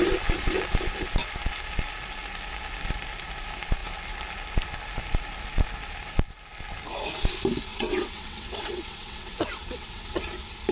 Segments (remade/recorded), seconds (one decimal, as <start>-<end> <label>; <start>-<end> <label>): 0.0-7.7 recorded; 7.7-10.1 remade; 10.1-10.7 recorded